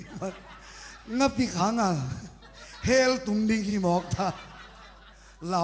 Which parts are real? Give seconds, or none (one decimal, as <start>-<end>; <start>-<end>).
0.0-1.0; 1.6-3.7; 4.3-5.6